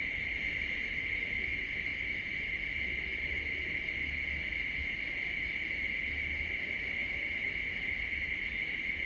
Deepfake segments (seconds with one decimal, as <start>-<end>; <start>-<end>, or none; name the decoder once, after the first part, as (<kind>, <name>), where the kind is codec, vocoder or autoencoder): none